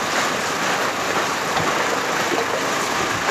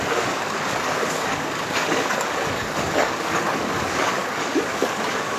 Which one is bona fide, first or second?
first